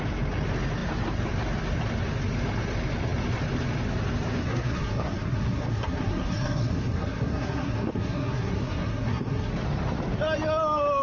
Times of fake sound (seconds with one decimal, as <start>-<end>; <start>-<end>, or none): 4.4-9.5